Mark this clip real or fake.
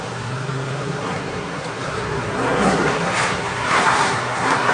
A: fake